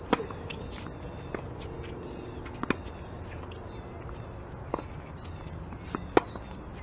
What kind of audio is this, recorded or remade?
recorded